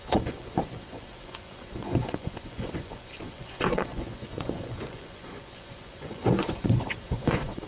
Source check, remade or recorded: remade